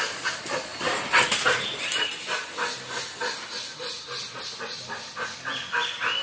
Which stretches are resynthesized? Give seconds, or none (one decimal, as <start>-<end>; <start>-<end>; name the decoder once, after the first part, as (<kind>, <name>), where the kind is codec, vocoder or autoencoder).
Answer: none